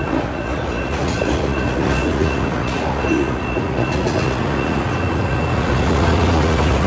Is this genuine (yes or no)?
no